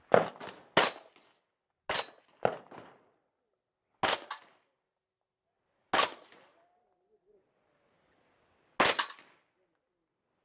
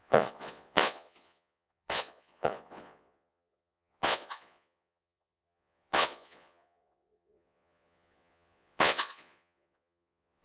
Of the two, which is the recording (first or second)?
first